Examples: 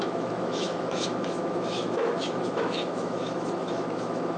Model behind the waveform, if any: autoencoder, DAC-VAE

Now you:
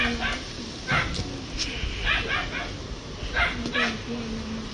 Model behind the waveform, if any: none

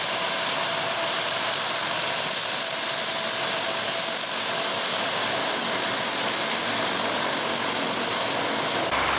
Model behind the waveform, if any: none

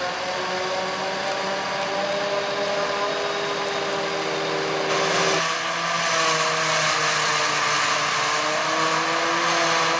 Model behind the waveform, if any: none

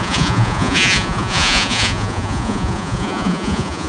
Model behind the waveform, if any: vocoder, Vocos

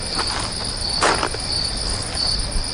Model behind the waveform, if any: none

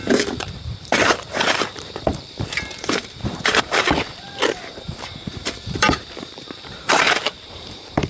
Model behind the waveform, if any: vocoder, BigVGAN v2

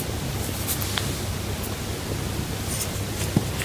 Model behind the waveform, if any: none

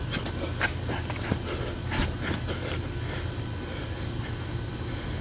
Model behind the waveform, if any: none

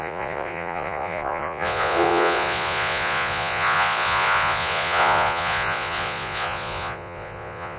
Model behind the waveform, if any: vocoder, Vocos